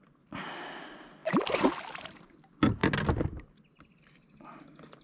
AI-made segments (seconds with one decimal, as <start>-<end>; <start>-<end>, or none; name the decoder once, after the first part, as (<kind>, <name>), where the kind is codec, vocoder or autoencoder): none